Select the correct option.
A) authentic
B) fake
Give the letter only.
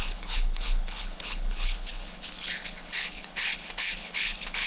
B